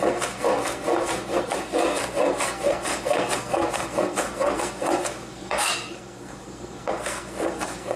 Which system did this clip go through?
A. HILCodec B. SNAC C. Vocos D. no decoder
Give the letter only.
B